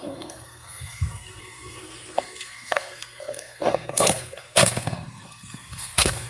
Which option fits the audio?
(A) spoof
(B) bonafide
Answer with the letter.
A